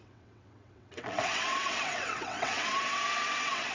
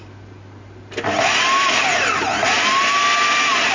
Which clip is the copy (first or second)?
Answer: first